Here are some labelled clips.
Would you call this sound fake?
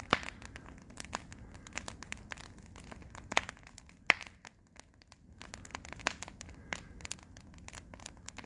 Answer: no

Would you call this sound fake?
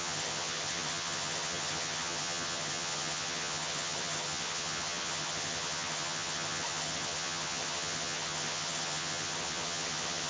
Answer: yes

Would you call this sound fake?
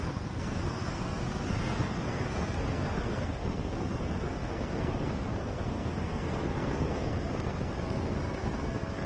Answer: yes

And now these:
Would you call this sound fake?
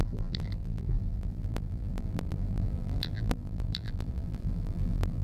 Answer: yes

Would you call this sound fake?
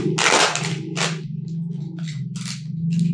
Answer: no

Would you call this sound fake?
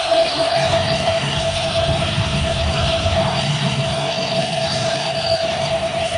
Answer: yes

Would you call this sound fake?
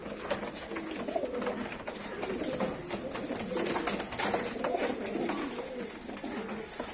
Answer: no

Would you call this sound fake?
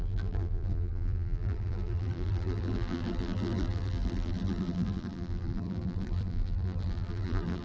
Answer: yes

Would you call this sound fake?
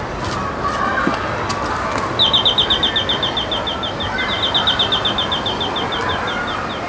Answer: no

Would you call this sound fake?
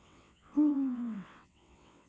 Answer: yes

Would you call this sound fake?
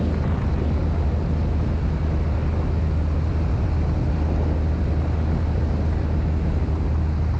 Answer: no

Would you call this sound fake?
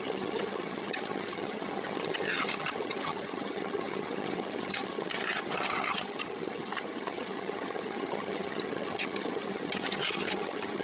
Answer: yes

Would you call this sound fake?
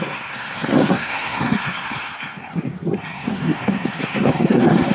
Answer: yes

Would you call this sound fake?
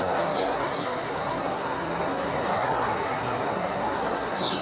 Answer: yes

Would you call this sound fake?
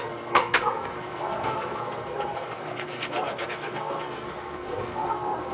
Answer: yes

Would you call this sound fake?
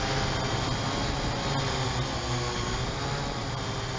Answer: no